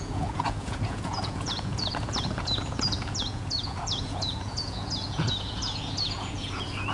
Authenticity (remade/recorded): remade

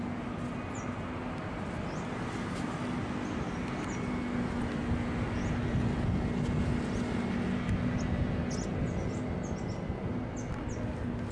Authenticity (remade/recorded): recorded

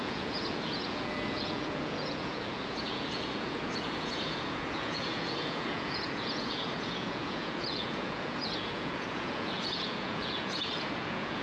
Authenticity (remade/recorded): remade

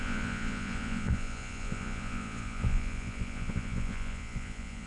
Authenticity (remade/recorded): remade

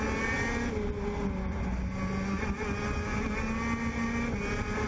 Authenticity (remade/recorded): recorded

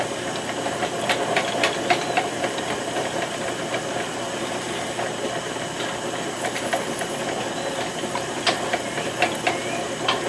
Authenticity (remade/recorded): recorded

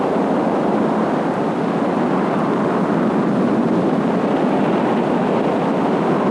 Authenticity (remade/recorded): recorded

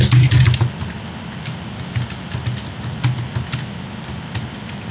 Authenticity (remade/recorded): recorded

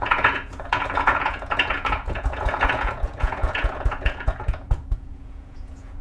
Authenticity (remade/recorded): remade